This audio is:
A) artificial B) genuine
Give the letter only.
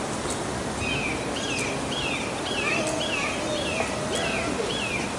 B